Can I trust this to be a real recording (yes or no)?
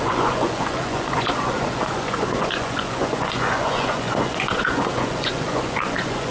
no